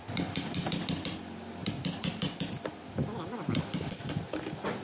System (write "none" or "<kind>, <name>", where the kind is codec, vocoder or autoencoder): none